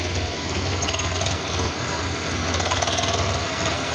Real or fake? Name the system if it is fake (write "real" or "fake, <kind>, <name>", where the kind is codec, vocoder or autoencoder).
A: fake, codec, SNAC